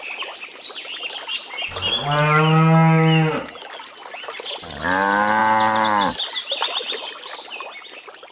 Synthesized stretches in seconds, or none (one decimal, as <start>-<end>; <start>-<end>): none